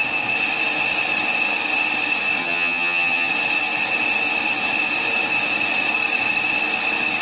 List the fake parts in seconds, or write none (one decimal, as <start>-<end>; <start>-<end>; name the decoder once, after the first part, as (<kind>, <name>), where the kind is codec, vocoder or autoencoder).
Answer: 2.4-3.3 (vocoder, HiFi-GAN)